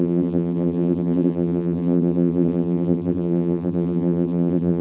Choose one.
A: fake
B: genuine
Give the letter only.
A